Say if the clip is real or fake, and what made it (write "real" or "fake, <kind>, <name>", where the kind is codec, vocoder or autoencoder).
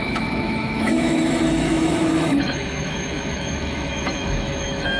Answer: fake, autoencoder, DAC-VAE